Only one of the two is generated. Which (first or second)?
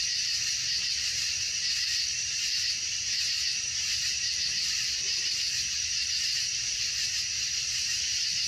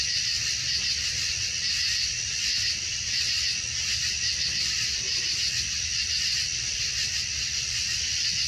first